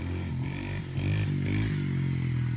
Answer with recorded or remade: recorded